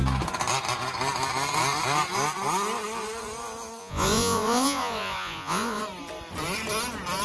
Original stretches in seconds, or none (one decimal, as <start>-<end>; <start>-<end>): 0.0-3.8; 5.8-7.2